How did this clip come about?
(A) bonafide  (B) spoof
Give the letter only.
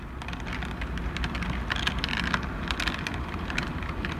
A